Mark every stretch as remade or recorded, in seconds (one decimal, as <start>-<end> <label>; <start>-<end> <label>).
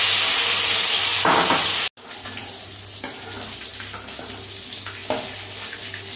0.0-6.2 recorded